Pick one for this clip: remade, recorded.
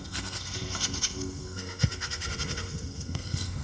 remade